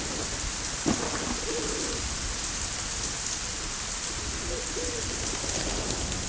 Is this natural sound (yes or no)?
yes